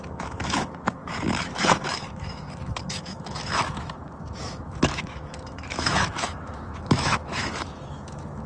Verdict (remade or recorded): remade